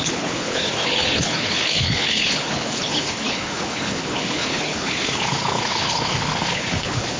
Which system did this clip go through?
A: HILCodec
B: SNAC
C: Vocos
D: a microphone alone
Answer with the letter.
A